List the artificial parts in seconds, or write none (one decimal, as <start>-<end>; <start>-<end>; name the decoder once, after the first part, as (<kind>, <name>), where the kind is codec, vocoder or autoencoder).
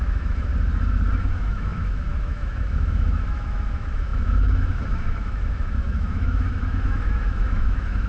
0.0-0.5 (autoencoder, DAC-VAE); 1.2-8.1